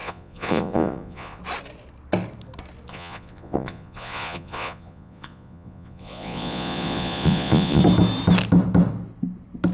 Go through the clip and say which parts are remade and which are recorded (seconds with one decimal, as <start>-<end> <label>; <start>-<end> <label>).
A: 0.0-1.4 remade; 1.4-2.9 recorded; 2.9-7.8 remade; 7.8-9.7 recorded